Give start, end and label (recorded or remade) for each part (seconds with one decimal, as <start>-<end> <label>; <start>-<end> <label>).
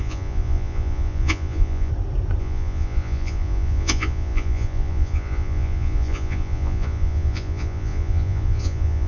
0.0-1.9 remade; 1.9-2.4 recorded; 2.4-9.1 remade